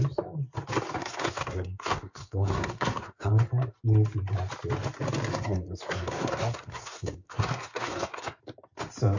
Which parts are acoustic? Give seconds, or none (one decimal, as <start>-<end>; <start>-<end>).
0.0-1.0; 3.3-5.3; 8.4-9.2